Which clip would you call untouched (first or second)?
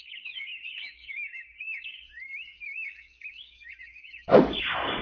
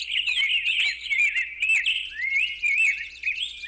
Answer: second